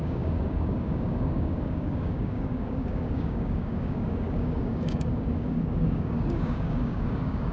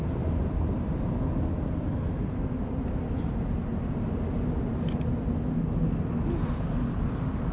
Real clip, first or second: second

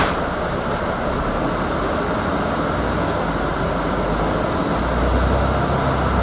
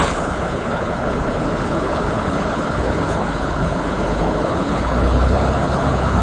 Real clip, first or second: first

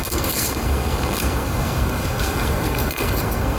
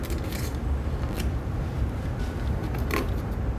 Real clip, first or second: second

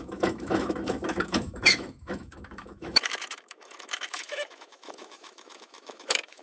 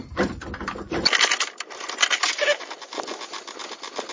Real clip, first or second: second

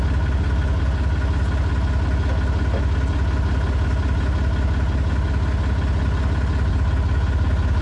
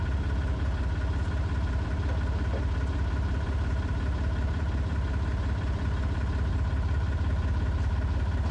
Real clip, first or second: first